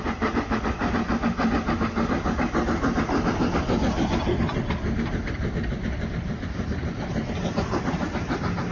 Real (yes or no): yes